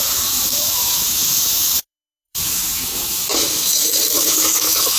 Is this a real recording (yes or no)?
no